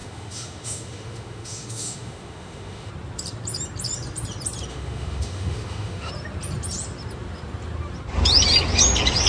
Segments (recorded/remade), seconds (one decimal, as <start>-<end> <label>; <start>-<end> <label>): 0.0-2.9 remade; 2.9-4.7 recorded; 4.7-6.1 remade; 6.1-9.3 recorded